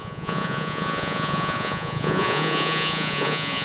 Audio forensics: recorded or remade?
remade